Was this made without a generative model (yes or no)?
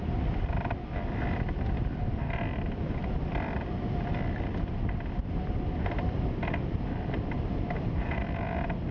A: yes